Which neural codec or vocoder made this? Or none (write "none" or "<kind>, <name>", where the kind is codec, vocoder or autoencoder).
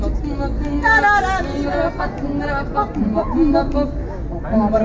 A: none